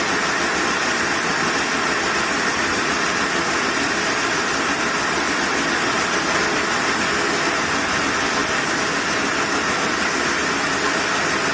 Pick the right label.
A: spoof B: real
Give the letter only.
B